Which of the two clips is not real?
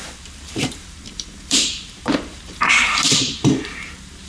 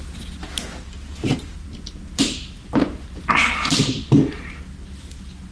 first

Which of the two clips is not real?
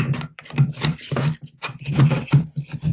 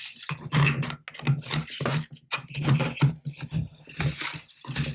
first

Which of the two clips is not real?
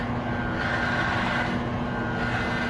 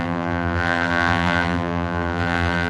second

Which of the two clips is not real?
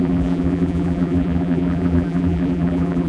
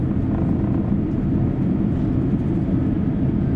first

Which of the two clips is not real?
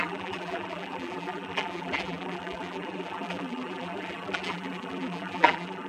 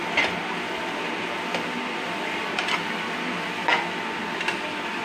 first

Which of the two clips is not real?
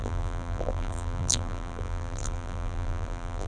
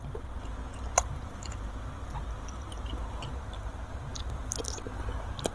first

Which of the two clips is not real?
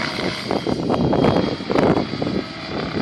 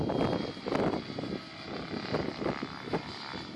first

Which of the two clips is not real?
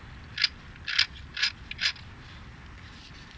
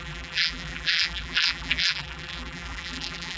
second